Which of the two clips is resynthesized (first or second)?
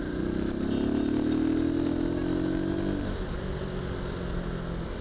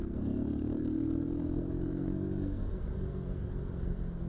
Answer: second